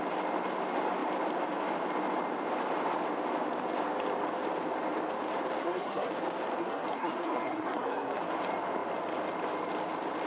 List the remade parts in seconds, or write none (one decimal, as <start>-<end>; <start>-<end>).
5.6-6.1; 6.6-8.2